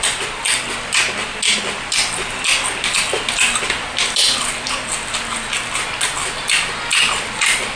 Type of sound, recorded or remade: recorded